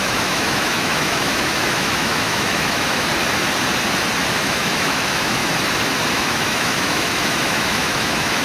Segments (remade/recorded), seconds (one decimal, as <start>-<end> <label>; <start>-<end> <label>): 0.0-3.1 remade; 3.1-4.3 recorded; 4.3-5.4 remade; 5.4-6.1 recorded; 6.1-8.4 remade